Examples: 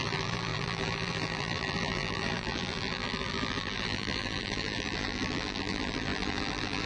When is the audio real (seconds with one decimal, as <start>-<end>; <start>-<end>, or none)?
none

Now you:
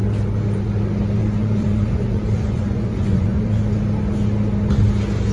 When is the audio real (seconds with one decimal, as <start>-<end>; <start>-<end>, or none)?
0.0-1.2; 3.6-5.3

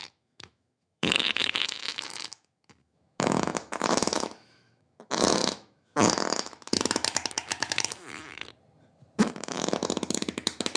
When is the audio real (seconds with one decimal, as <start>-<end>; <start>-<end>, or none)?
8.4-9.2

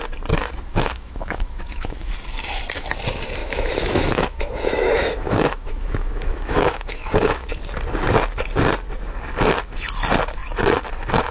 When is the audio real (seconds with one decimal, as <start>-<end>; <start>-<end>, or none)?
0.0-0.7; 2.1-3.4; 7.5-11.3

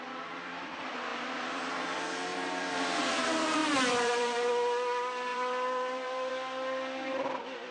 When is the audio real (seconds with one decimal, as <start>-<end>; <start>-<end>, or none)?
0.0-1.1; 1.8-3.6; 4.5-5.3; 6.3-7.7

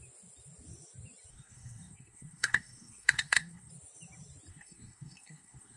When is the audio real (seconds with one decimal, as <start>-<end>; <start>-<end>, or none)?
0.0-1.3; 3.7-4.5

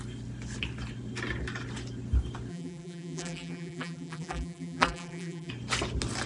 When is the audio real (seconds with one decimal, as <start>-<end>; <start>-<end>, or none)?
0.0-2.5; 5.5-6.3